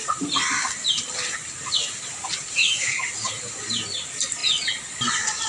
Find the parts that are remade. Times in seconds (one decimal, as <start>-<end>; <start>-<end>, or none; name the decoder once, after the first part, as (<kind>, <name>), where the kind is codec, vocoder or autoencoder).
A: 2.6-3.1 (autoencoder, DAC-VAE)